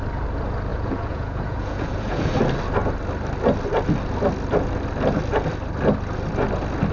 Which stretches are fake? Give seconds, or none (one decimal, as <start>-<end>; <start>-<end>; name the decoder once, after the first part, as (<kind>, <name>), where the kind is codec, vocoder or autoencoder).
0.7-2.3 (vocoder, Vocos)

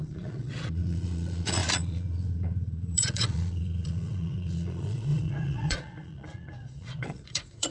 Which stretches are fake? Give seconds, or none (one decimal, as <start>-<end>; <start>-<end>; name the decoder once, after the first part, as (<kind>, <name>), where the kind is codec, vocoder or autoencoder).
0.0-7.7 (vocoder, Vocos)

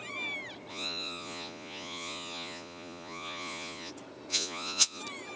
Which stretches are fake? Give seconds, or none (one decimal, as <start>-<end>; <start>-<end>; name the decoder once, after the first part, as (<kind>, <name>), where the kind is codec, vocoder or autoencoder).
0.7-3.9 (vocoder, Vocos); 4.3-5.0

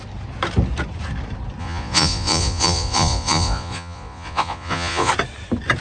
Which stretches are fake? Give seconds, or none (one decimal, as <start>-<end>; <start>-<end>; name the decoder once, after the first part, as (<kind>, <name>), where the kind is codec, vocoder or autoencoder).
1.6-5.1 (vocoder, Vocos)

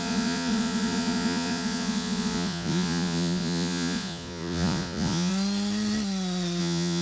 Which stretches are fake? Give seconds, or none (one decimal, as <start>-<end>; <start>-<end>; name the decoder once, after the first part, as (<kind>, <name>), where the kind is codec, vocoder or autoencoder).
0.0-5.3 (vocoder, Vocos); 6.6-7.0

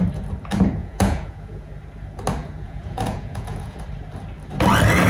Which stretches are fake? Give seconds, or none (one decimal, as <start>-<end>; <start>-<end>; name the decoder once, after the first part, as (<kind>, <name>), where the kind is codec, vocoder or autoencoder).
0.8-1.7 (vocoder, Vocos); 2.4-3.8

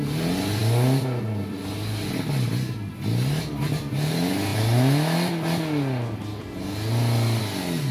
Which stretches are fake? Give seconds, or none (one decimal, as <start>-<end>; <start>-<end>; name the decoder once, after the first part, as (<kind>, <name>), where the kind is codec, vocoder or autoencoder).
none

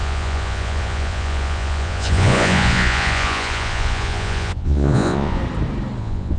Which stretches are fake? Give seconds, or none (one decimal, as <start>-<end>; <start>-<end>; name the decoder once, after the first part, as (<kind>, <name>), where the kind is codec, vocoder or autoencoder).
0.0-5.4 (vocoder, Vocos); 6.0-6.4